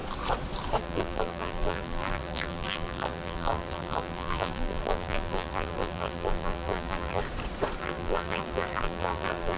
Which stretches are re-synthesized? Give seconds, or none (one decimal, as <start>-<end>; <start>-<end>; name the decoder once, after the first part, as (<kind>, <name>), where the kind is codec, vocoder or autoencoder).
0.8-7.2 (vocoder, BigVGAN v2); 7.8-9.6